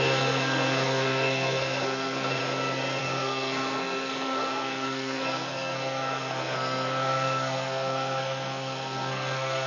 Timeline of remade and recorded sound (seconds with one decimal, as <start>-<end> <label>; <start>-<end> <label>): 0.0-2.4 remade; 2.4-3.0 recorded; 3.0-9.7 remade